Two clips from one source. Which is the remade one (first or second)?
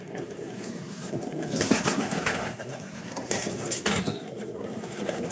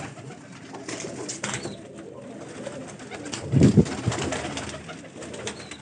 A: first